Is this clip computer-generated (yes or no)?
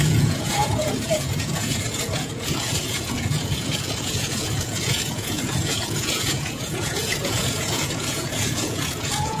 yes